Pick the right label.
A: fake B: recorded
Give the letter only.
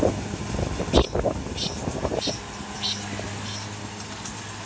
B